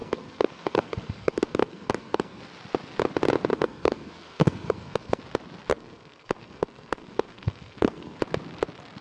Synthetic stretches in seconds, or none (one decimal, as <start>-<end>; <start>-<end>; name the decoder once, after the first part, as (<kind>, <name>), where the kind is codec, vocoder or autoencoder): 0.0-2.4 (codec, SNAC); 3.5-5.2; 5.7-8.2